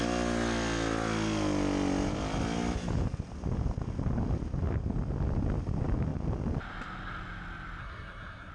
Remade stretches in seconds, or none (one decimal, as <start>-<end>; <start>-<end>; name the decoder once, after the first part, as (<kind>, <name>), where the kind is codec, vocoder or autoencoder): 7.8-8.5 (codec, SNAC)